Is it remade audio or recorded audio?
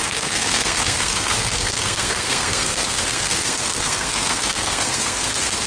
remade